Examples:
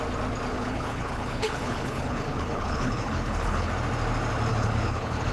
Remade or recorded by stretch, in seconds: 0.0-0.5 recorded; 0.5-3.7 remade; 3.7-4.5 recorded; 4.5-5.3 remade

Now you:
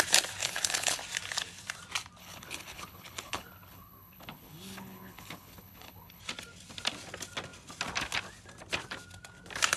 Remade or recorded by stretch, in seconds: 0.0-0.4 recorded; 0.4-1.0 remade; 1.0-2.2 recorded; 2.2-6.2 remade; 6.2-9.8 recorded

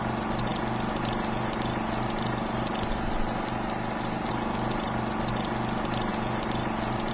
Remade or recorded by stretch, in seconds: 0.0-7.1 recorded

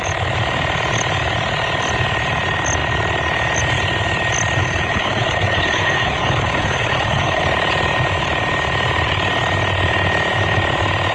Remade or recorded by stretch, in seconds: 0.0-4.6 recorded; 4.6-7.4 remade; 7.4-11.1 recorded

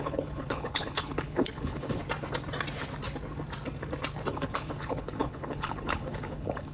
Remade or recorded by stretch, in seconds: 0.0-2.0 remade; 2.0-4.3 recorded; 4.3-6.7 remade

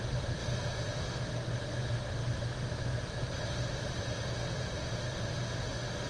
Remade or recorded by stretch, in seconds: 0.0-6.1 recorded

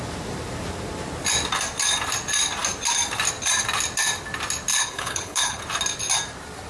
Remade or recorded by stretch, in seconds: 0.0-4.7 recorded; 4.7-5.6 remade; 5.6-6.7 recorded